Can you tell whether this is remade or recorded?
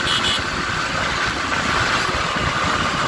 recorded